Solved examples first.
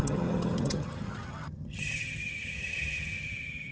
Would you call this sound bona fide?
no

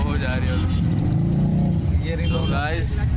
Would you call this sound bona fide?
yes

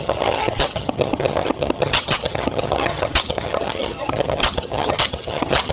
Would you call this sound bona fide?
no